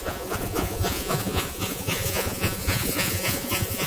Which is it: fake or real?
fake